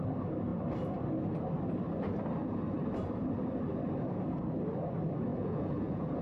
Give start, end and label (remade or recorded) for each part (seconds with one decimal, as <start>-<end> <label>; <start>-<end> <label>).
0.0-5.3 recorded; 5.3-6.2 remade